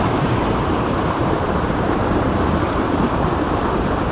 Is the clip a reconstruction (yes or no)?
yes